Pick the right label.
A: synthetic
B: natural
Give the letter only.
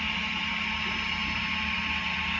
B